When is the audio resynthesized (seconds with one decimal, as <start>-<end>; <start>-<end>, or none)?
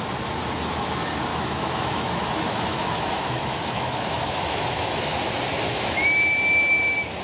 1.3-5.2